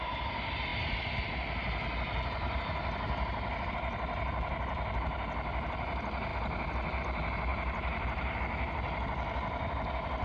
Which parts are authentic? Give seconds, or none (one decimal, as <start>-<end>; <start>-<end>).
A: 0.0-7.5; 8.4-10.2